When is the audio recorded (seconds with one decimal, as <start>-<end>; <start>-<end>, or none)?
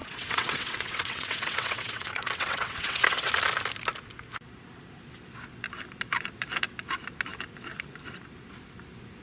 3.3-9.2